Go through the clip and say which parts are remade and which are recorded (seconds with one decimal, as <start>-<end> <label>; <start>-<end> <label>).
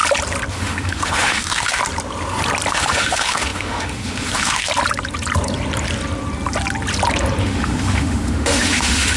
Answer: 0.0-0.5 recorded; 0.5-1.8 remade; 1.8-2.7 recorded; 2.7-4.7 remade; 4.7-7.4 recorded; 7.4-9.2 remade